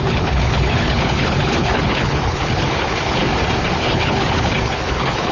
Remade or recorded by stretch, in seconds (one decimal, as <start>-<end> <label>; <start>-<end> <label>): 0.0-3.2 remade; 3.2-3.8 recorded; 3.8-5.3 remade